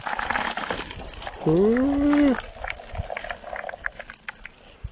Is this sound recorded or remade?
recorded